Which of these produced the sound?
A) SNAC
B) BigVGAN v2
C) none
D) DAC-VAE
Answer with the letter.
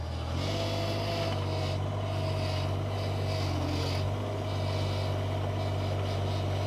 C